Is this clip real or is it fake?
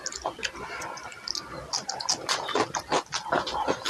real